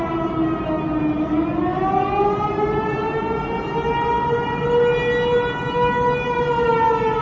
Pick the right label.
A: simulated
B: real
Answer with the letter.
B